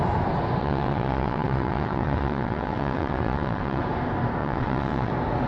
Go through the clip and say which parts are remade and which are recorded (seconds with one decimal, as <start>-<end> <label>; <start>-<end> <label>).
0.0-0.6 recorded; 0.6-3.8 remade; 3.8-4.4 recorded; 4.4-5.1 remade; 5.1-5.5 recorded